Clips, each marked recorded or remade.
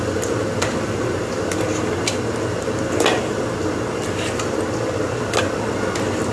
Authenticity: recorded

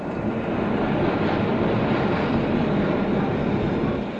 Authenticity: recorded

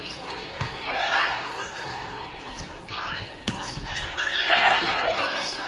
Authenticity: remade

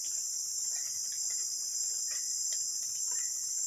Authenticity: recorded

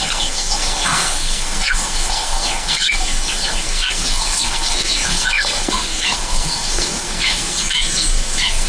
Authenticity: remade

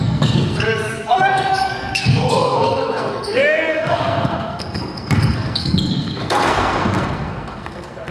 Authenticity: remade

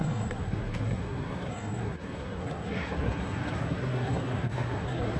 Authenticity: remade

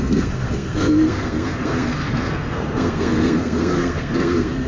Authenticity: remade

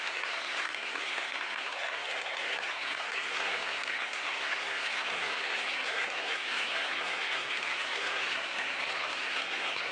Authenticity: remade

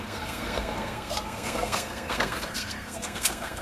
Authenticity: remade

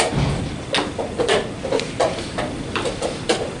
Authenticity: recorded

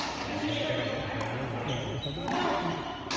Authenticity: recorded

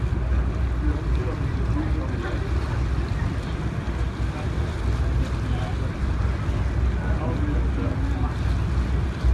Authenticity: recorded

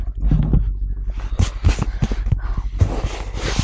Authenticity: recorded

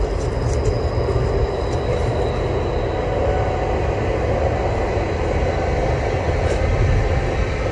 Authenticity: recorded